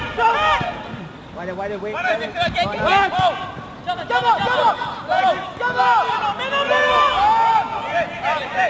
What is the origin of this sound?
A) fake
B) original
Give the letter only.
B